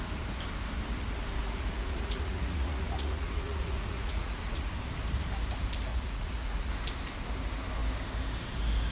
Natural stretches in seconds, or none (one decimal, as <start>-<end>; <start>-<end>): 0.0-1.4; 4.7-5.9; 6.7-8.9